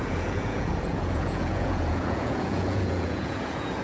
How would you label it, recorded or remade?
remade